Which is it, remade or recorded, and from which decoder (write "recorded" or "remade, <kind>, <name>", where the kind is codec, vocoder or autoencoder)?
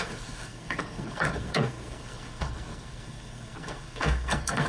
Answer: remade, codec, SNAC